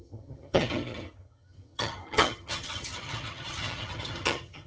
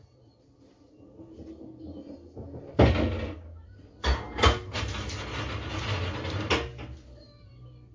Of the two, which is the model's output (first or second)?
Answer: first